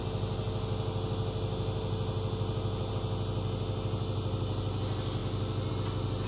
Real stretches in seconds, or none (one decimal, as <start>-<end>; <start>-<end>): 0.0-6.3